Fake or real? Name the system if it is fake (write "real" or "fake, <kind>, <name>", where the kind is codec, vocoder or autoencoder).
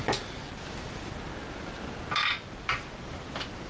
real